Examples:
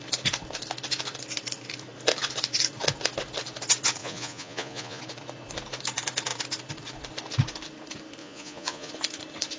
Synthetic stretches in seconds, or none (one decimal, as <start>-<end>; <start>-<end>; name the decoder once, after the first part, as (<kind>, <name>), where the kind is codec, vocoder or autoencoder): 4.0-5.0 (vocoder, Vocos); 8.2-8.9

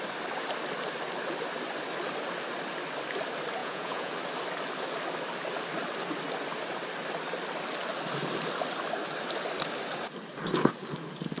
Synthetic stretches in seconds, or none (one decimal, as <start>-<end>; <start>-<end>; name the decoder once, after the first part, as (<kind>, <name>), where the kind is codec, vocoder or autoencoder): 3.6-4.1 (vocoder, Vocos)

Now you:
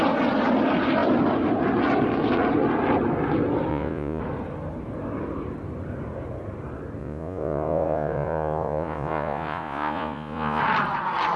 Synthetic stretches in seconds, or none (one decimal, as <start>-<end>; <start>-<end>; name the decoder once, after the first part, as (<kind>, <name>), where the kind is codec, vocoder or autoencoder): 3.7-4.2 (vocoder, Vocos); 7.0-10.6

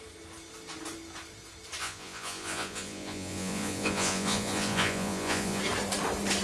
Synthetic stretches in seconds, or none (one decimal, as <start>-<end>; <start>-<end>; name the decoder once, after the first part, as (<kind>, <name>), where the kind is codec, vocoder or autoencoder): 1.8-5.6 (vocoder, Vocos)